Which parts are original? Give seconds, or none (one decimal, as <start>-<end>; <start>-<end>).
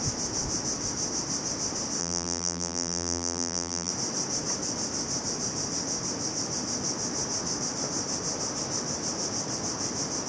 0.0-2.0; 3.9-10.3